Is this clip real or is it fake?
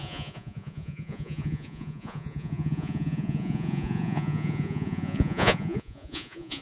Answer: fake